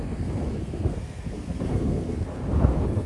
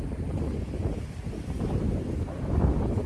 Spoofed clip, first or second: first